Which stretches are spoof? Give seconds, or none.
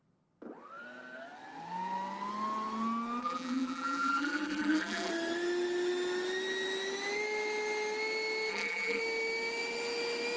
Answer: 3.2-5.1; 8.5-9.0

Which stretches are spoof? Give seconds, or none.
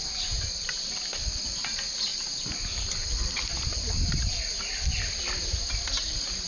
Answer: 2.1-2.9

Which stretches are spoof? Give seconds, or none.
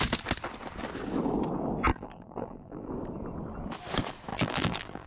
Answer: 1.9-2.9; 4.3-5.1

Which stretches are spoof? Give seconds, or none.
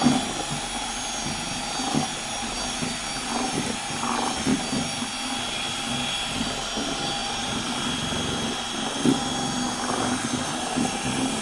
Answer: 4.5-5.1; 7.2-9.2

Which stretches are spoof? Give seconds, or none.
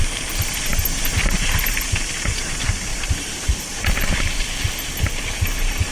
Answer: 2.9-5.9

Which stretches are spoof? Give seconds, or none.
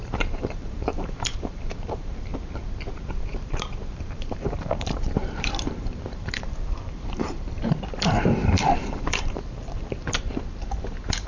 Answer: 0.0-2.3; 3.1-11.3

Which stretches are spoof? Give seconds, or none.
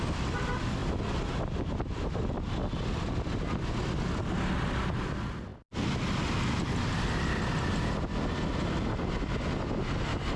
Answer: none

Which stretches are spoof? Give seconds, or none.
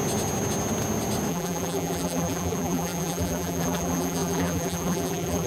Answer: 1.3-5.5